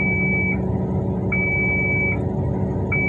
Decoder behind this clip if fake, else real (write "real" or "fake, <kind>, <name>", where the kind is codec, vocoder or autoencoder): real